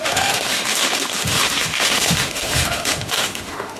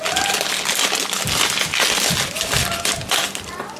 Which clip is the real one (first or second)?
second